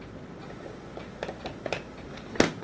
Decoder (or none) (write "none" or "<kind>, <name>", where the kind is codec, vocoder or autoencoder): none